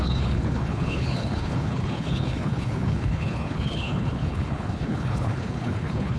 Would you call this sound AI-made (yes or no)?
yes